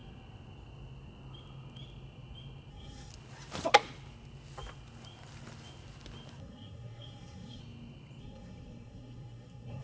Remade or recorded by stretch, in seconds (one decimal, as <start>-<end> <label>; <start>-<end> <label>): 0.0-2.7 recorded; 2.7-3.1 remade; 3.1-6.4 recorded; 6.4-7.6 remade; 7.6-8.2 recorded; 8.2-9.8 remade